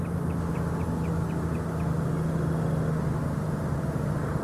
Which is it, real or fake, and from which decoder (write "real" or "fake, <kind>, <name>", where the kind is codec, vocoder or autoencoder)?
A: real